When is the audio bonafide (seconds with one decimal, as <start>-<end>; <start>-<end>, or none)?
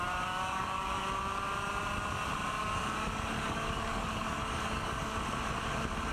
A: 1.0-2.6; 5.1-6.1